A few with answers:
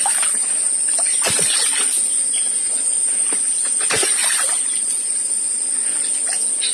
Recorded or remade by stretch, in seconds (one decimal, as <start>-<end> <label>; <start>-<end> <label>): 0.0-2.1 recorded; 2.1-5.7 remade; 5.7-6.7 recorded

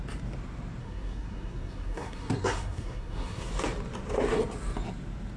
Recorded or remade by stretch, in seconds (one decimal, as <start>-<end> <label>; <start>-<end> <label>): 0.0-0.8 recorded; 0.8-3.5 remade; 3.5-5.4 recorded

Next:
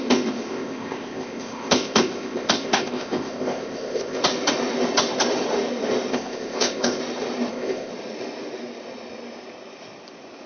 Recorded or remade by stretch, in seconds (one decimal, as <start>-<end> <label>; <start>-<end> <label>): 0.0-4.2 remade; 4.2-6.1 recorded; 6.1-7.0 remade; 7.0-7.5 recorded; 7.5-7.9 remade; 7.9-10.5 recorded